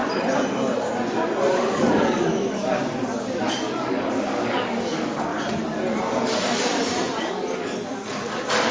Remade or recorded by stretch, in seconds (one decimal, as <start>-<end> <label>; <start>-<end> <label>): 0.0-1.5 recorded; 1.5-5.3 remade; 5.3-7.2 recorded; 7.2-8.7 remade